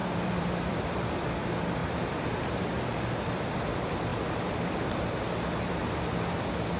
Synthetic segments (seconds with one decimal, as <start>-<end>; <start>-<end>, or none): 0.0-1.3; 1.8-3.5